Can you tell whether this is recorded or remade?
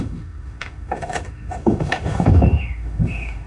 remade